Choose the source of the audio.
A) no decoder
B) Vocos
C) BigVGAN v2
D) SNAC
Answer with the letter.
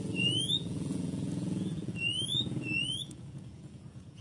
B